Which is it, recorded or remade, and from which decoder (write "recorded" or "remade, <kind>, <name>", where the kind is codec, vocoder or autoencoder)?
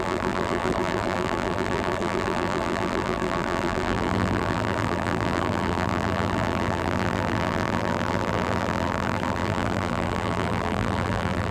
remade, vocoder, BigVGAN v2